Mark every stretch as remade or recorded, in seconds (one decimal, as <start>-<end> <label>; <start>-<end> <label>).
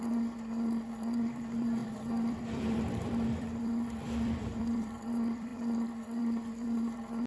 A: 0.0-7.3 remade